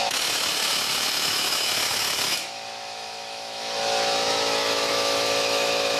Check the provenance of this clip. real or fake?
fake